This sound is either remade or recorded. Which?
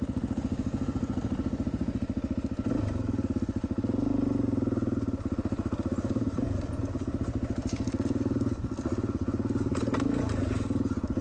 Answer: recorded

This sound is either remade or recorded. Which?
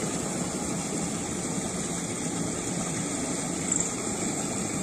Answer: recorded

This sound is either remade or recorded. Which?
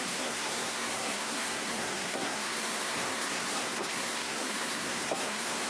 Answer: remade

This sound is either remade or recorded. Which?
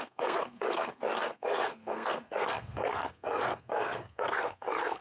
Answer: remade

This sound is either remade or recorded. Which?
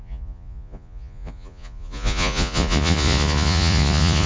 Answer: remade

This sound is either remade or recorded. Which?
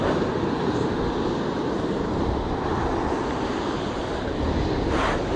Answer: recorded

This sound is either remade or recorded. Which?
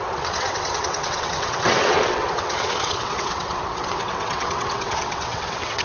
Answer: remade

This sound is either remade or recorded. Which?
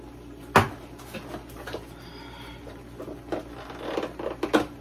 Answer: recorded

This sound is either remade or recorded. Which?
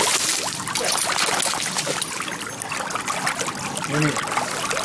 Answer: recorded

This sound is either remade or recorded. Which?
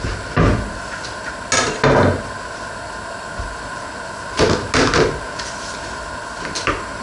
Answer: recorded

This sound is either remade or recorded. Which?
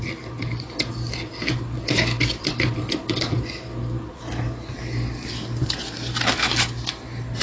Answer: recorded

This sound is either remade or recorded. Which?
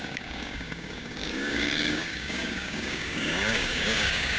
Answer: remade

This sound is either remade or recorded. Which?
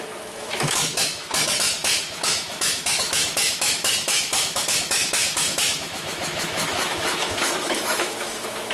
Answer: remade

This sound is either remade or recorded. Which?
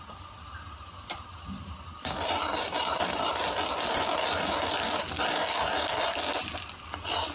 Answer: recorded